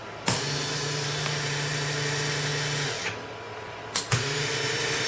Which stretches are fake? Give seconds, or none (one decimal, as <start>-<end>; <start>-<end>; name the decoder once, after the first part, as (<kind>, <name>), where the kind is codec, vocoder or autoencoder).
0.7-2.5 (vocoder, BigVGAN v2); 4.0-5.1